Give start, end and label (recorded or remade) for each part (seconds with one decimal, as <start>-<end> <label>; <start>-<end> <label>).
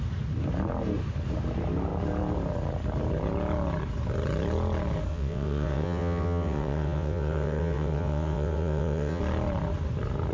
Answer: 0.0-5.1 recorded; 5.1-9.2 remade; 9.2-10.3 recorded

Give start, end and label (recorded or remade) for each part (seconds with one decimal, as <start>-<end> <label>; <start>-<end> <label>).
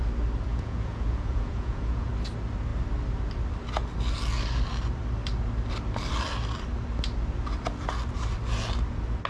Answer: 0.0-0.5 recorded; 0.5-2.1 remade; 2.1-9.3 recorded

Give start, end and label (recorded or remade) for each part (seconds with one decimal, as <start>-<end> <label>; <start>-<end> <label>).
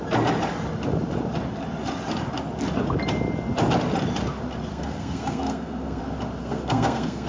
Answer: 0.0-4.7 recorded; 4.7-6.0 remade; 6.0-6.4 recorded; 6.4-7.3 remade